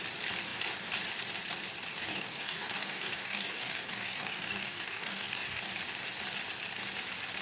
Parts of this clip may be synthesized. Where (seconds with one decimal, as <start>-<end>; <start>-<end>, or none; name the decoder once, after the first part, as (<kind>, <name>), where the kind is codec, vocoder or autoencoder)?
1.9-5.6 (codec, DAC)